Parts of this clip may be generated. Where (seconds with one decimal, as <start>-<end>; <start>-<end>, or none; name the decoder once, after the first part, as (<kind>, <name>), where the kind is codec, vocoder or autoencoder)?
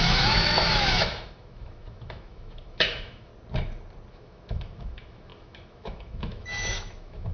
0.0-3.3 (autoencoder, DAC-VAE); 4.1-7.3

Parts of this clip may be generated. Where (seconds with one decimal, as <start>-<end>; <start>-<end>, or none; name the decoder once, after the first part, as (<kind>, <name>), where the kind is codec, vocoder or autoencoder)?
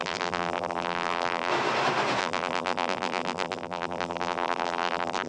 0.0-1.5 (vocoder, BigVGAN v2); 2.2-5.3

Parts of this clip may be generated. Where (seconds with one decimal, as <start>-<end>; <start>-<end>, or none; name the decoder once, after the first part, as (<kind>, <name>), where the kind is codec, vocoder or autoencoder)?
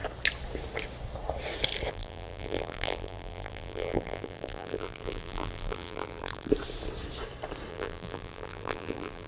1.9-6.5 (vocoder, BigVGAN v2); 7.7-9.3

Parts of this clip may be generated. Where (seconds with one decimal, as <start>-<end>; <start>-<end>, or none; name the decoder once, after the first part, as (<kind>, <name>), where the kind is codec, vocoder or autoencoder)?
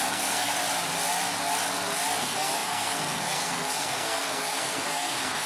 0.0-0.6 (codec, SNAC); 2.2-5.5